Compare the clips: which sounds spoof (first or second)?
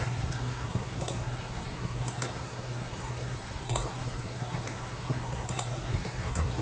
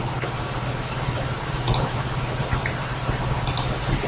first